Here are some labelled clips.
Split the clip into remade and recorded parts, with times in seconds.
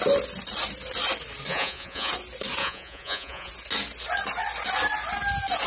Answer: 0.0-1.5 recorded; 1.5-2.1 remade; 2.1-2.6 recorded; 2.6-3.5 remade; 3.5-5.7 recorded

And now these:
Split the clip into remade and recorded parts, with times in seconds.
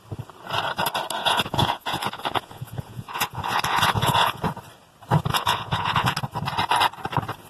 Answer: 0.0-1.2 recorded; 1.2-4.4 remade; 4.4-5.3 recorded; 5.3-6.1 remade; 6.1-7.5 recorded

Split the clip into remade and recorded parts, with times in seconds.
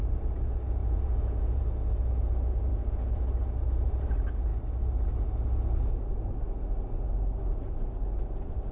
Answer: 0.0-0.8 recorded; 0.8-1.6 remade; 1.6-2.7 recorded; 2.7-3.2 remade; 3.2-8.7 recorded